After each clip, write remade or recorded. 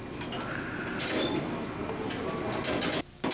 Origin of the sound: recorded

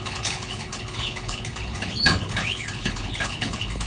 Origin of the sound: remade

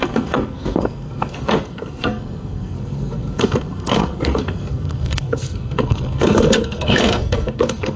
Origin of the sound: remade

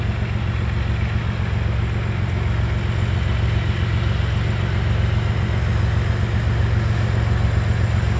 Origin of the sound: recorded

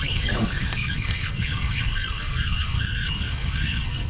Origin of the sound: remade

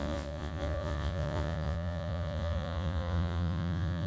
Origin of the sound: remade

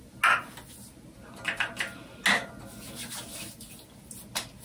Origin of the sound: recorded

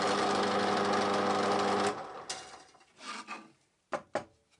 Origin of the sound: recorded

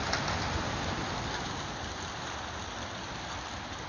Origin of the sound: recorded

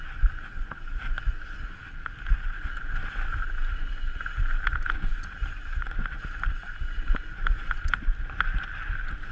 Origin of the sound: recorded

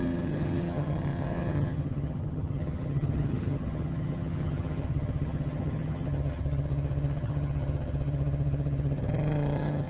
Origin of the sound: remade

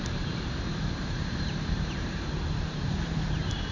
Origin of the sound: remade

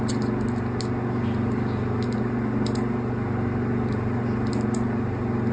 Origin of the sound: recorded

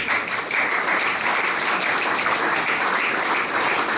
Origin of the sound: recorded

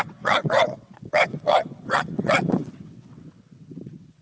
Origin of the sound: remade